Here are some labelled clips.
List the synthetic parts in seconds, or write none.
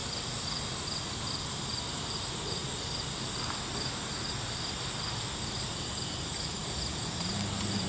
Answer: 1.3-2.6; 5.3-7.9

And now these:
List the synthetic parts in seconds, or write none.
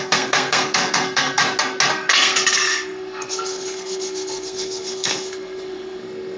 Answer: 0.0-1.4; 1.9-6.4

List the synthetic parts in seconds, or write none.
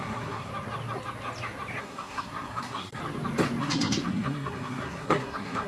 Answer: 0.0-0.5; 1.8-3.0; 3.6-5.7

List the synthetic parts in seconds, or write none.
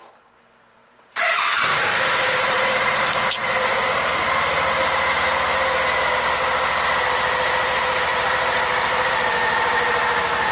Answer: 0.8-4.1